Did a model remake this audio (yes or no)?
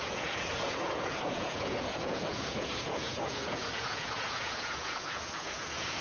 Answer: yes